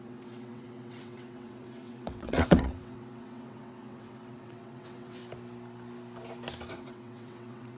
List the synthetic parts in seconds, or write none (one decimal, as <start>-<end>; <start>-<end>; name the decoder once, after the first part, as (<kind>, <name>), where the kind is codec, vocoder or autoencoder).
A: 0.0-5.2 (vocoder, WaveNeXt); 6.7-7.8